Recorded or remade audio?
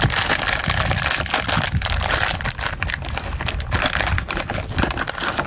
recorded